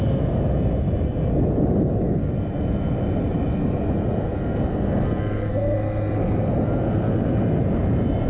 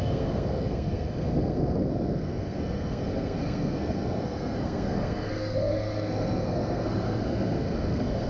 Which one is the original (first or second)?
first